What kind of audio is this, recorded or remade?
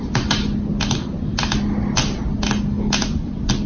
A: recorded